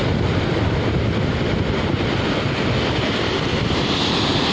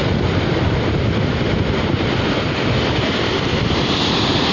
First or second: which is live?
first